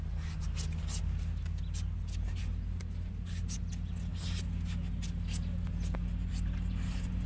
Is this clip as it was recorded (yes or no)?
yes